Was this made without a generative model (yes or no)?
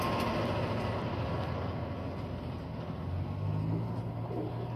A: yes